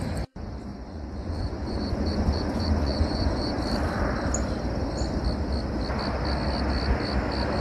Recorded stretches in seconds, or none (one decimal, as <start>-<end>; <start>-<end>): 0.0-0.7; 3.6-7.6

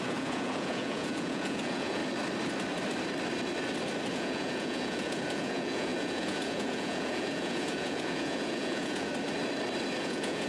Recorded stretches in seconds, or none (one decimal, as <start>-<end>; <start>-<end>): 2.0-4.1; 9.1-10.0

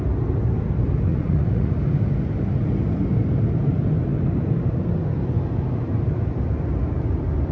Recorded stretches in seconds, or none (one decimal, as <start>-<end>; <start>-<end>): 0.0-1.1; 1.7-7.5

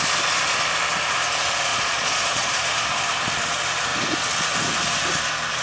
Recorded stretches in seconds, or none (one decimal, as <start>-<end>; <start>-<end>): 0.0-1.7; 2.5-5.6

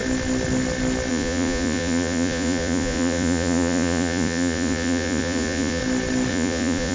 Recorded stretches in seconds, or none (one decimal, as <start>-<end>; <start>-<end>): 0.0-1.1; 5.8-6.3

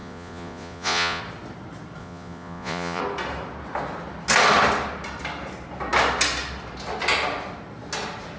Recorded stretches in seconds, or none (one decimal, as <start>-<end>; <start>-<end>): 1.2-2.0; 3.0-8.4

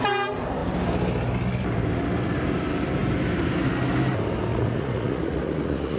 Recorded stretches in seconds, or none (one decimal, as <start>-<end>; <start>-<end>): 0.0-4.5